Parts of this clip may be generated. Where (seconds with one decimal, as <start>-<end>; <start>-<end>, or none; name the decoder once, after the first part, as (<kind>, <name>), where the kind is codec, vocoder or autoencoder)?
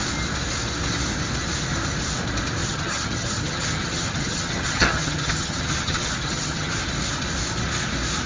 2.6-6.8 (vocoder, HiFi-GAN)